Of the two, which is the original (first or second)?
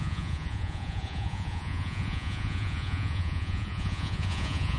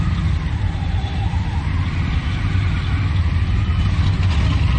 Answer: second